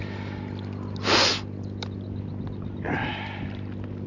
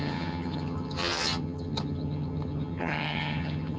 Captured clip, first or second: first